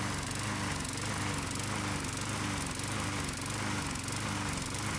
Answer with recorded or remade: recorded